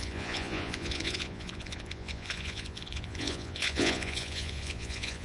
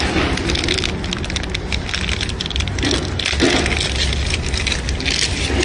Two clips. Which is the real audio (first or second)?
second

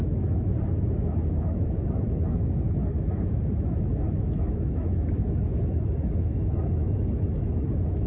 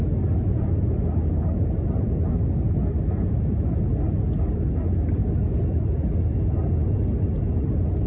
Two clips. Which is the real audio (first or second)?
second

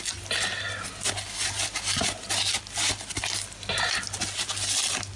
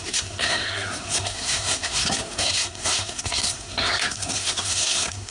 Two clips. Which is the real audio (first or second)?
first